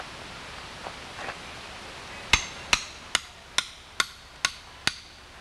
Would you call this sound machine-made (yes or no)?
no